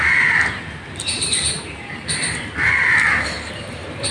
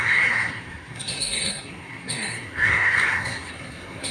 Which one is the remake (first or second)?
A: second